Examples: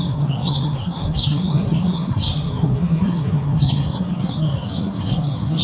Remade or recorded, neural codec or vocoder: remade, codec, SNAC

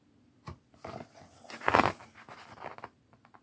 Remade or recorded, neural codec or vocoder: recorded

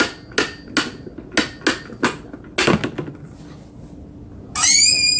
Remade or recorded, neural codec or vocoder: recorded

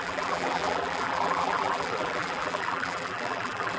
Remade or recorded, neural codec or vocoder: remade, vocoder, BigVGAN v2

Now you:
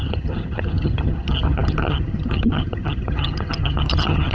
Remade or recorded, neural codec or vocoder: remade, vocoder, HiFi-GAN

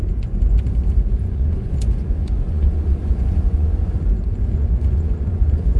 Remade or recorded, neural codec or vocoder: remade, vocoder, Vocos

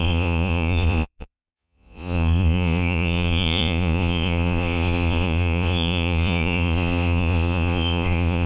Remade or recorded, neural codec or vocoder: remade, vocoder, Vocos